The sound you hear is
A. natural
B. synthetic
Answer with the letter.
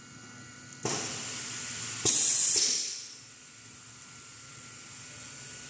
A